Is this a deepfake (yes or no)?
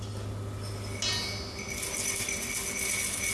no